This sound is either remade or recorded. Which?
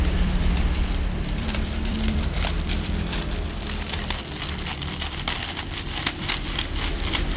remade